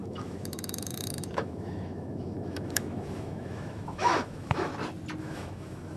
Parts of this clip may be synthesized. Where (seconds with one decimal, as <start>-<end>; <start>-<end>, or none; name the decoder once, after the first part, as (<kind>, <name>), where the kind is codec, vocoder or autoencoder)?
0.0-4.7 (autoencoder, DAC-VAE); 5.2-6.0